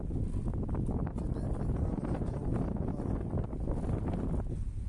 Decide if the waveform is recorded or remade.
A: recorded